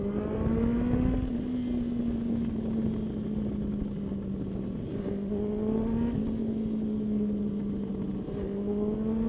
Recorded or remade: recorded